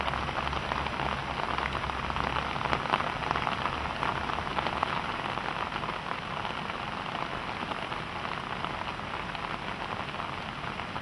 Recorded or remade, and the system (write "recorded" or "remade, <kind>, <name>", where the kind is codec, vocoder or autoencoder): recorded